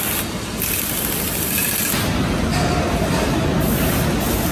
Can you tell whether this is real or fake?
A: real